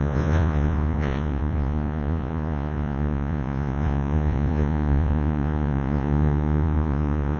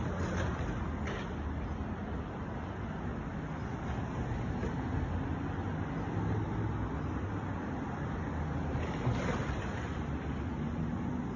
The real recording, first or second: second